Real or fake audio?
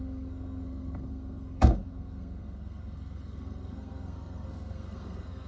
fake